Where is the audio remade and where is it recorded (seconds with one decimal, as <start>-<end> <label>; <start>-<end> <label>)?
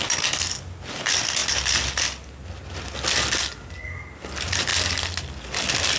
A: 0.0-6.0 recorded